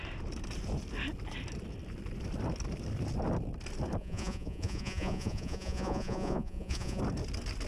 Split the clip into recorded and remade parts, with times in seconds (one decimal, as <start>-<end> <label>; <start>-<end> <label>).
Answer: 0.0-4.0 recorded; 4.0-7.0 remade; 7.0-7.7 recorded